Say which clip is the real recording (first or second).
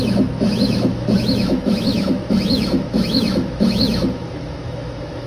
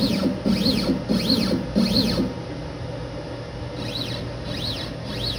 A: second